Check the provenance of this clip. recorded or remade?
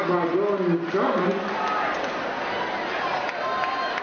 recorded